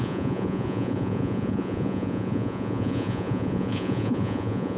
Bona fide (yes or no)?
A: no